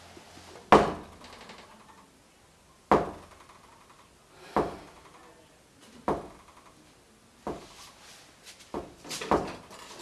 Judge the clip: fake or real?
real